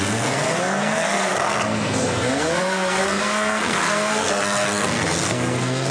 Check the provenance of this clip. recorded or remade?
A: remade